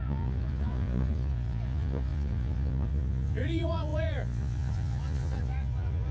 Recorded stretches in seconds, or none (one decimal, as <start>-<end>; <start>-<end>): none